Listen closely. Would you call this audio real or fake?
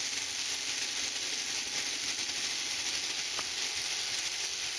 real